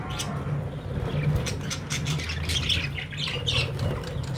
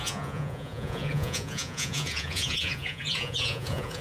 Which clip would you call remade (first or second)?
second